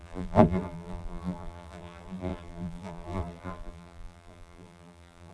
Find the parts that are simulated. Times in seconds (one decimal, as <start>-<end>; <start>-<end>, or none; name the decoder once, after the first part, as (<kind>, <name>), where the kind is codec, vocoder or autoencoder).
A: 0.0-5.3 (vocoder, BigVGAN v2)